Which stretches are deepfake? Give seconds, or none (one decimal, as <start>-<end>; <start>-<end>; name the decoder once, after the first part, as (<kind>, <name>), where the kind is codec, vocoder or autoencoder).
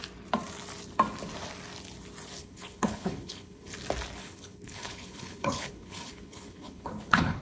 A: 2.4-3.7 (codec, HILCodec); 4.2-7.4